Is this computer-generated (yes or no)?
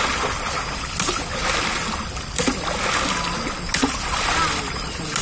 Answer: no